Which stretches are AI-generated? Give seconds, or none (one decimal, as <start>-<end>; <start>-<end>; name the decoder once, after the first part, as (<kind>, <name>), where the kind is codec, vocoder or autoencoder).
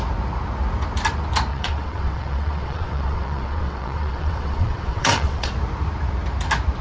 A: 1.5-5.5 (vocoder, WaveNeXt)